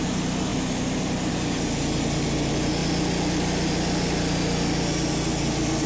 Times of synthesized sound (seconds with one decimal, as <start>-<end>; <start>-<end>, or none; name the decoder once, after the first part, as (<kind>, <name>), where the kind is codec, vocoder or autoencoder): none